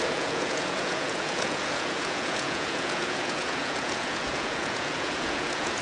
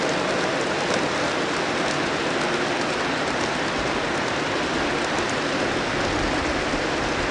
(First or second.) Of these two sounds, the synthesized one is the first